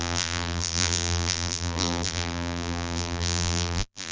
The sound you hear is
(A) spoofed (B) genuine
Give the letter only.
A